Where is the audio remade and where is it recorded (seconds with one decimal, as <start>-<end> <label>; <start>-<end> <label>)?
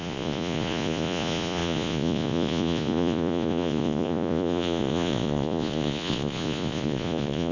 0.0-7.5 remade